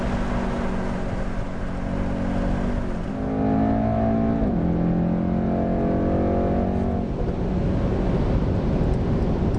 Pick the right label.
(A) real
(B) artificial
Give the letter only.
A